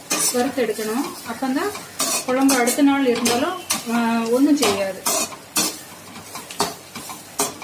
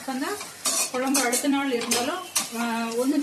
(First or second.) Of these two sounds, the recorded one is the first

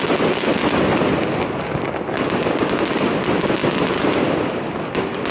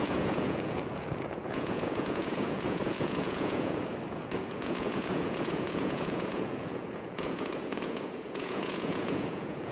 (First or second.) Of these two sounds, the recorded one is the first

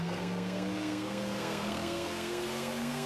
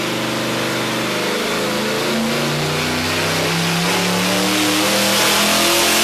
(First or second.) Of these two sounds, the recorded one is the second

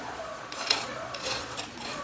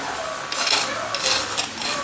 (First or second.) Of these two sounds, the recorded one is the second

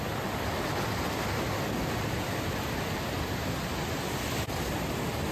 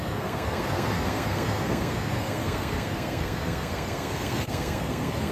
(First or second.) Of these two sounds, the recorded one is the first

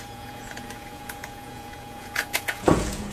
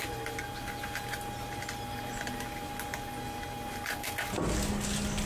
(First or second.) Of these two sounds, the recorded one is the second